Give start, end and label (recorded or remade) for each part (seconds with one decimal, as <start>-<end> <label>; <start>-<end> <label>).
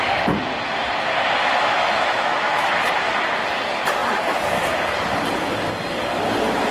0.0-1.4 recorded; 1.4-2.9 remade; 2.9-6.7 recorded